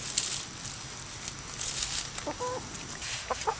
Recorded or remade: recorded